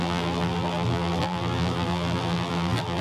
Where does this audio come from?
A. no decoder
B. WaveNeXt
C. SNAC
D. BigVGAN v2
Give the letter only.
D